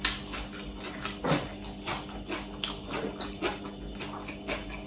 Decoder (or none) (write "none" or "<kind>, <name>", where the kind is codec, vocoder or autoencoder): none